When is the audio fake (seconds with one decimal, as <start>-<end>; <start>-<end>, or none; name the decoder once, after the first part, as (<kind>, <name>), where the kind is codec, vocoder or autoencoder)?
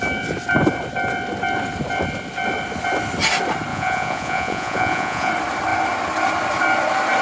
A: 3.7-5.3 (vocoder, Vocos)